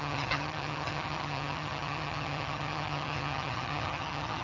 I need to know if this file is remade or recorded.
remade